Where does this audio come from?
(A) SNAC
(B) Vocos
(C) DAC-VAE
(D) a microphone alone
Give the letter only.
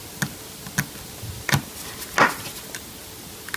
D